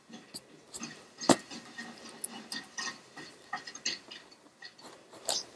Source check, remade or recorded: recorded